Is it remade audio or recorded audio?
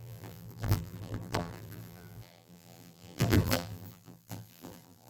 remade